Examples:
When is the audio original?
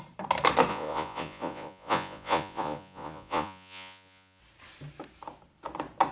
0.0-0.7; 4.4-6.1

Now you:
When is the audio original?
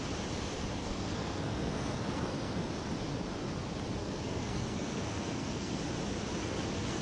0.0-0.8; 2.7-4.0; 5.8-6.4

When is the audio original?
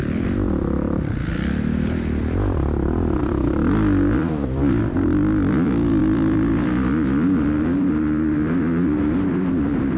none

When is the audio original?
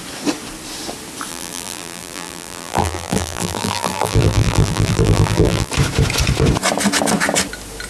0.0-1.3; 5.7-7.9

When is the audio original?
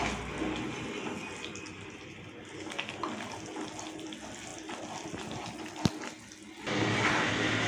0.0-7.7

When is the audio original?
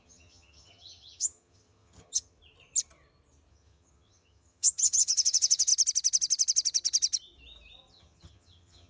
2.4-3.5; 5.7-7.9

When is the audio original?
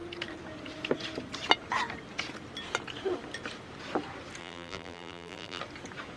0.0-4.4; 5.6-6.2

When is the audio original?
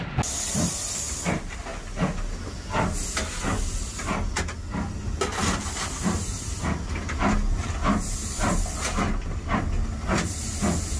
0.0-11.0